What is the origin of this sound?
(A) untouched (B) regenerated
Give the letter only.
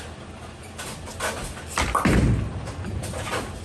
A